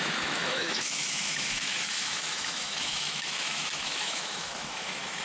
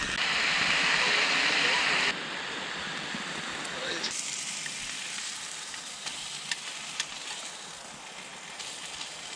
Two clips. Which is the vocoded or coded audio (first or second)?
first